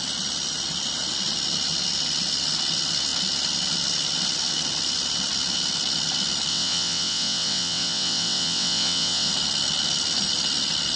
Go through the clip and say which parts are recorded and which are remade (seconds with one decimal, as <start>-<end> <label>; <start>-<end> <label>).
0.0-6.5 recorded; 6.5-9.3 remade; 9.3-11.0 recorded